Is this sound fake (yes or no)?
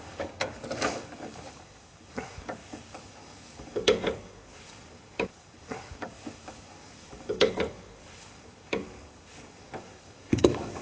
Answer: yes